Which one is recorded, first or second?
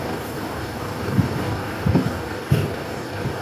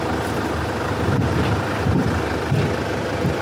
second